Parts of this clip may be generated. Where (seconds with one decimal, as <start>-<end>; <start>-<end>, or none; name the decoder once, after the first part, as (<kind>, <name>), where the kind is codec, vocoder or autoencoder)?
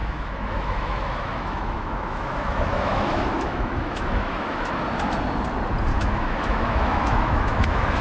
0.0-4.7 (autoencoder, DAC-VAE); 5.9-8.0